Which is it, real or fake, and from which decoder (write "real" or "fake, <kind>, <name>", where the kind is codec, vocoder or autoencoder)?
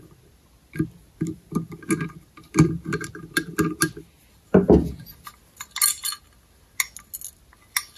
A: real